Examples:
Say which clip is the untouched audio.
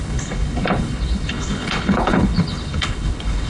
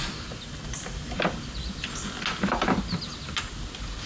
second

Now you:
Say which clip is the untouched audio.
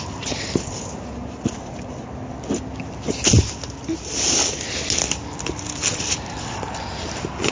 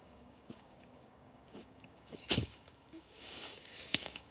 first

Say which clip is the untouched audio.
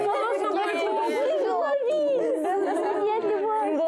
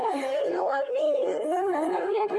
first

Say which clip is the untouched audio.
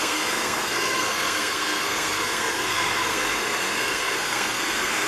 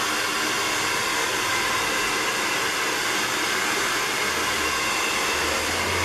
second